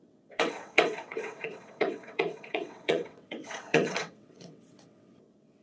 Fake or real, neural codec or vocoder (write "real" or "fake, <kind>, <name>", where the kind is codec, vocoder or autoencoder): fake, vocoder, WaveNeXt